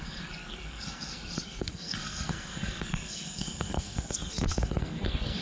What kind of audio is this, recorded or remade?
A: remade